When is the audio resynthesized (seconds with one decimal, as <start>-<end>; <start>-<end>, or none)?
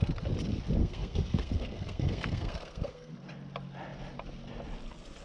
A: 0.8-3.1